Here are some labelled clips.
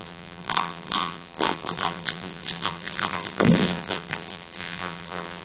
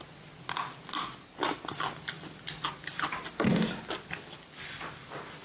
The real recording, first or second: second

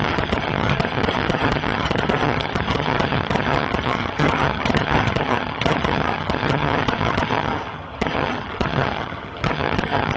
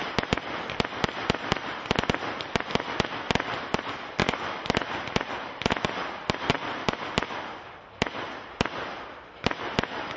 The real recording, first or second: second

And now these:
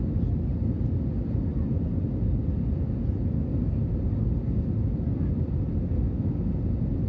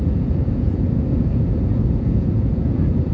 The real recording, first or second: first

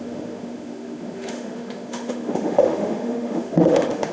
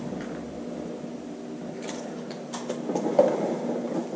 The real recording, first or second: second